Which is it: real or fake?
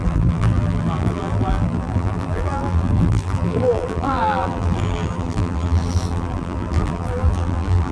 fake